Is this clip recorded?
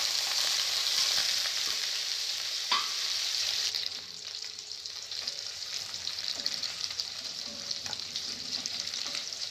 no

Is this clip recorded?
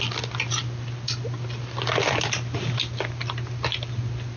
yes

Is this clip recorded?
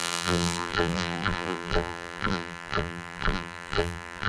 no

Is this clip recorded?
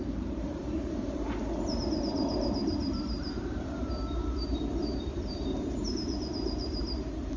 no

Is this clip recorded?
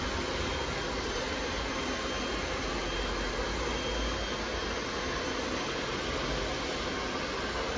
yes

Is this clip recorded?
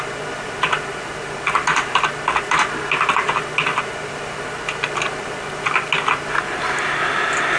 yes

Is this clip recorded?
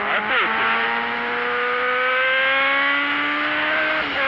yes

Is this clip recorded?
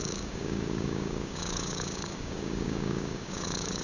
no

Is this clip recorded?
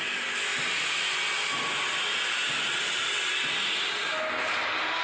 yes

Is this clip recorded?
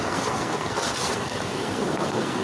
no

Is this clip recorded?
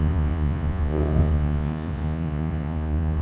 no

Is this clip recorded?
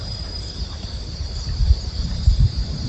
no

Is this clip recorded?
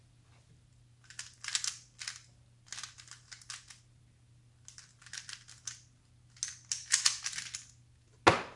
yes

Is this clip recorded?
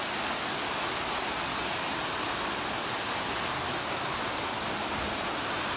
yes